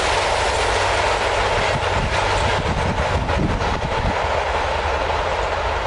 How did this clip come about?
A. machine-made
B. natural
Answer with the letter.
B